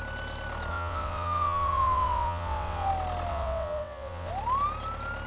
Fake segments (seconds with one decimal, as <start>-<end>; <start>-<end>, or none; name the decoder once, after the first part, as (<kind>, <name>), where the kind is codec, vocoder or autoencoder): 0.7-2.9 (vocoder, WaveNeXt); 3.3-4.3